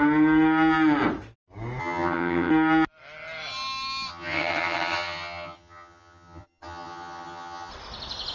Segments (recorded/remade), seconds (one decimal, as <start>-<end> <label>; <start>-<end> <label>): 0.0-1.8 recorded; 1.8-2.5 remade; 2.5-4.1 recorded; 4.1-7.7 remade; 7.7-8.3 recorded